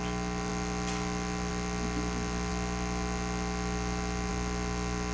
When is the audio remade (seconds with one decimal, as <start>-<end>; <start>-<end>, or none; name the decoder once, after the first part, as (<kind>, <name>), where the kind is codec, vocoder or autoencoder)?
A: none